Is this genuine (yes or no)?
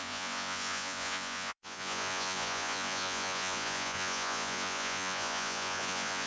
no